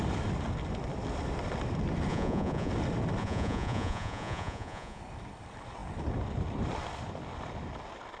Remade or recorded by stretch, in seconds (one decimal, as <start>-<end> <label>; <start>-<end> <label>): 0.0-2.1 recorded; 2.1-2.7 remade; 2.7-3.2 recorded; 3.2-5.0 remade; 5.0-8.2 recorded